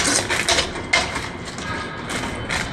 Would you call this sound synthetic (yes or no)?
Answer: no